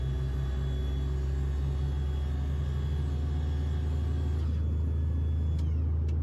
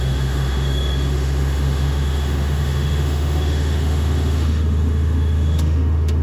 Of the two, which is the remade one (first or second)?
second